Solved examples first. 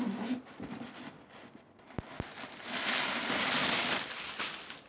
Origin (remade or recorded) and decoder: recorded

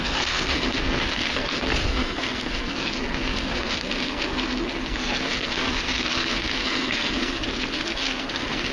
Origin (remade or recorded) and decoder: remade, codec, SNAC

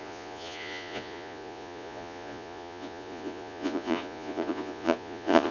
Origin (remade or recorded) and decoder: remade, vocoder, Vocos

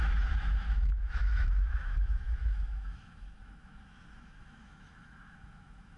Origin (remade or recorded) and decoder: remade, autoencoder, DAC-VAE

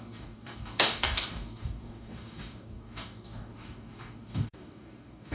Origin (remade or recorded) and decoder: remade, codec, DAC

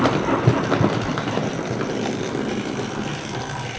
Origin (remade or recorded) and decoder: recorded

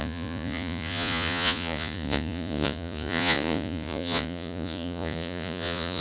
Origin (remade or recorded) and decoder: remade, vocoder, Vocos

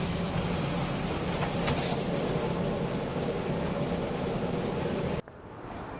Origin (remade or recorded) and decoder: recorded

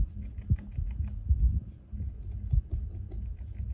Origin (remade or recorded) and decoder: recorded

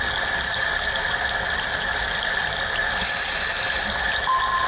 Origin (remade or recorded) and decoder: recorded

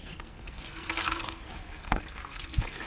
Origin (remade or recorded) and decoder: remade, codec, SNAC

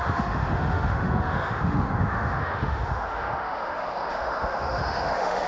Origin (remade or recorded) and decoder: remade, autoencoder, DAC-VAE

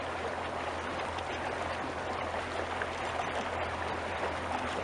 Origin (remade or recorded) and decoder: recorded